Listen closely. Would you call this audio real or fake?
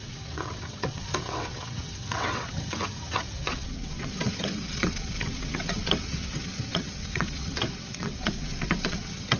fake